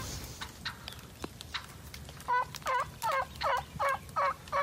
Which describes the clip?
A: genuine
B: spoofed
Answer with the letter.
A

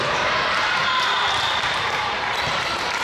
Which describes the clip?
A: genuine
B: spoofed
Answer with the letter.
B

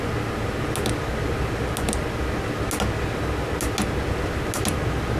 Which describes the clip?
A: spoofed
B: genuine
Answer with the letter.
B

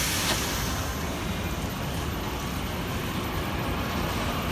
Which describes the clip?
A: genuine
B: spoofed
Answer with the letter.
A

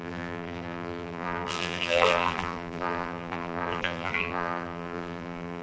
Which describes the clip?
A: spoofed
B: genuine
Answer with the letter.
A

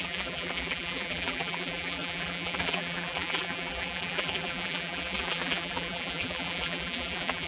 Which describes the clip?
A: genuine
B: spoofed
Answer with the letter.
B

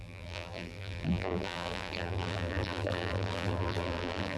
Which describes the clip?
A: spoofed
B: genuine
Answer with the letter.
A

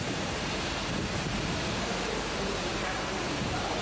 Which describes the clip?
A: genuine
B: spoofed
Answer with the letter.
B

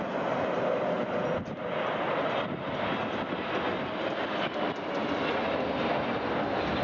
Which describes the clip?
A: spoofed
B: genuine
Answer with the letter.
B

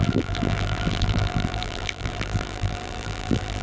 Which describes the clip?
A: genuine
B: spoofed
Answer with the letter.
B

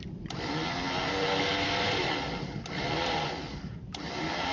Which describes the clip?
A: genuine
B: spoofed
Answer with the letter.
B